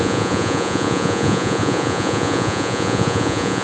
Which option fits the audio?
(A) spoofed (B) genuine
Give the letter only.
A